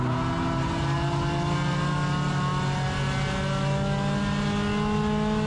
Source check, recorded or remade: recorded